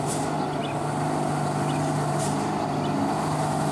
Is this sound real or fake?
real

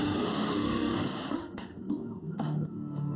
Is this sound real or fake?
fake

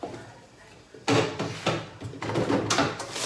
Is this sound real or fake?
real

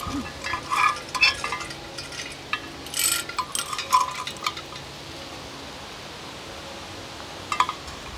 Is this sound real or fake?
real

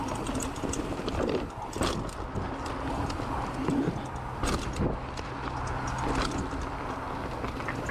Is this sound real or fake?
real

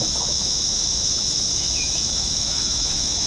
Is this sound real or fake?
fake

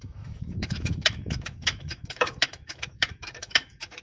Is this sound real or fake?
fake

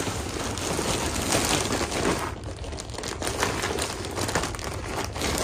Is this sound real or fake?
real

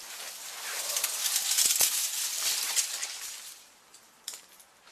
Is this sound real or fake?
real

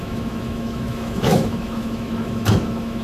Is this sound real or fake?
fake